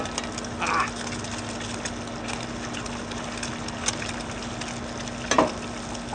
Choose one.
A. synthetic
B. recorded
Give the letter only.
B